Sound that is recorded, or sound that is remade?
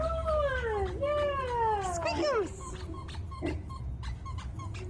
recorded